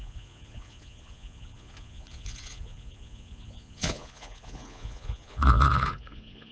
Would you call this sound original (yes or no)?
no